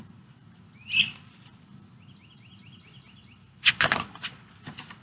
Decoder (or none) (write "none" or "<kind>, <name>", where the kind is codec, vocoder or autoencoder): none